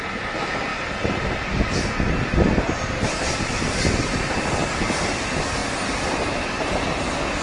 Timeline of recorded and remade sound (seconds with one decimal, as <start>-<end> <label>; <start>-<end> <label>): 0.0-7.4 recorded